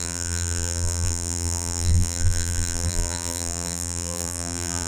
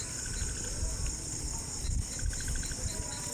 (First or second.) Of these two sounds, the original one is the second